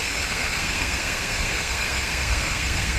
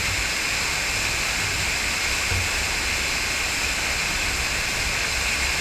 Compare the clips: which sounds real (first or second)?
second